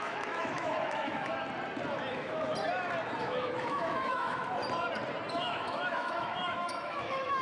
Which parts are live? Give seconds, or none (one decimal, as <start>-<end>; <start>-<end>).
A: 1.3-2.1; 2.5-3.2; 4.6-5.3